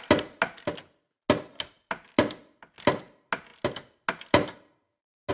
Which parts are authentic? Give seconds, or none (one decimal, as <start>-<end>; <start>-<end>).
0.0-5.3